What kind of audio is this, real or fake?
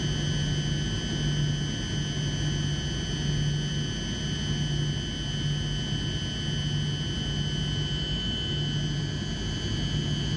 real